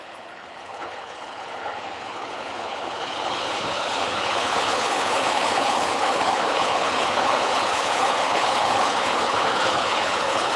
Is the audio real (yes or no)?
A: no